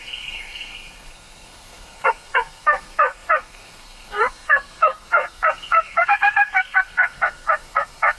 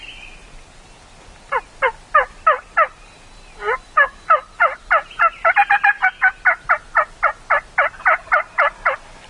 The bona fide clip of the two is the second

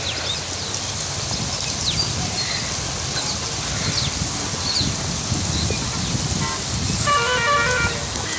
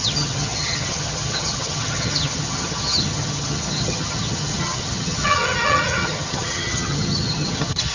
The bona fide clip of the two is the first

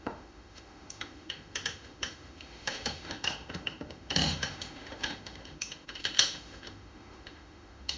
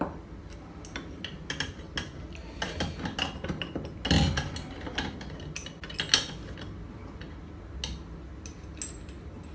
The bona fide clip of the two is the second